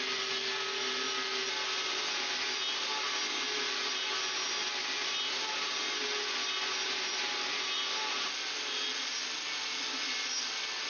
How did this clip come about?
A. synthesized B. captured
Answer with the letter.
B